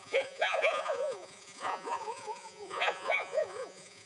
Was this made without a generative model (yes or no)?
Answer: no